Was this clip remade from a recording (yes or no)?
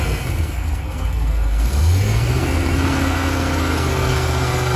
yes